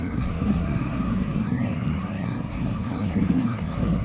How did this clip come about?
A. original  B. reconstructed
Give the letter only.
B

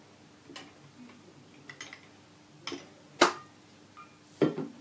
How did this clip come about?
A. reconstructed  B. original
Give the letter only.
B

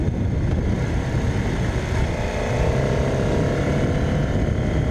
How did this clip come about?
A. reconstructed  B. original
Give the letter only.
B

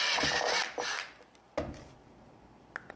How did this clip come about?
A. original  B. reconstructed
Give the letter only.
A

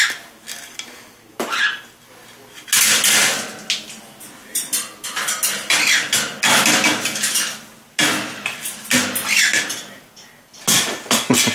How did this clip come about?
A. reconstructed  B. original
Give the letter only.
B